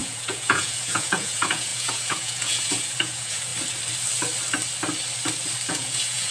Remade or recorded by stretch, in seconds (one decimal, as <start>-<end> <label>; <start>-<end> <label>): 0.0-3.5 remade; 3.5-5.7 recorded; 5.7-6.3 remade